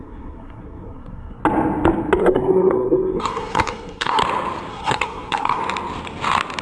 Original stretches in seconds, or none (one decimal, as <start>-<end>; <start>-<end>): 1.4-2.2; 4.2-4.7; 5.6-6.6